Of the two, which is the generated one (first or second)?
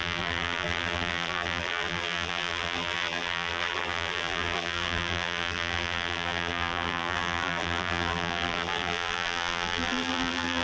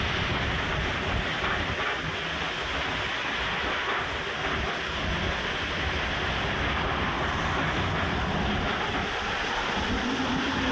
first